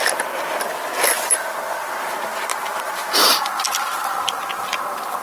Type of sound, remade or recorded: recorded